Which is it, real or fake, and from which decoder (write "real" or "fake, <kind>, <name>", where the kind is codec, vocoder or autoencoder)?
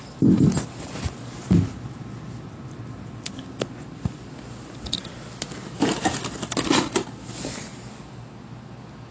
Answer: real